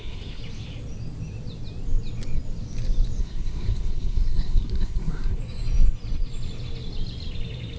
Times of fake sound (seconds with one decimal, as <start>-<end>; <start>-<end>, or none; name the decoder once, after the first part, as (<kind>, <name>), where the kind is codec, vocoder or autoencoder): 0.0-0.4 (codec, SNAC); 3.2-5.4